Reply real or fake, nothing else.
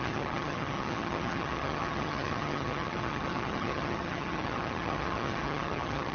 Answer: fake